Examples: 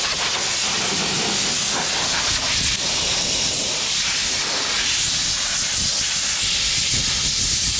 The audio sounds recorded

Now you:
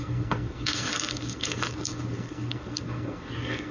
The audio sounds remade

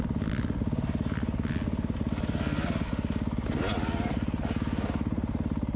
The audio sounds recorded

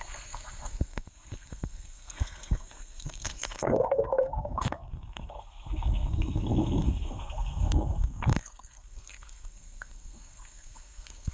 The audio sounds remade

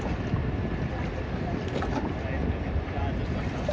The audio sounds recorded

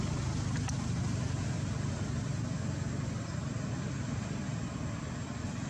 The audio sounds recorded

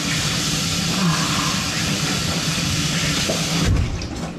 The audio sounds recorded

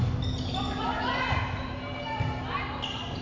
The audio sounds recorded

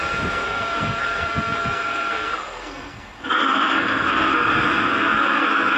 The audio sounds remade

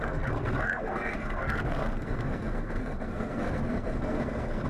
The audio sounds remade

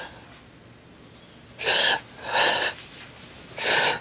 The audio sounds recorded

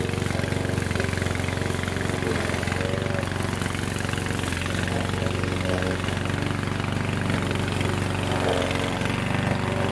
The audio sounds recorded